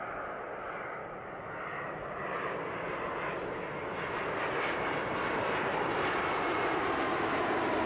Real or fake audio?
real